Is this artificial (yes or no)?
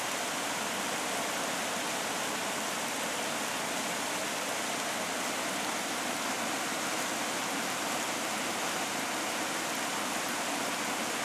no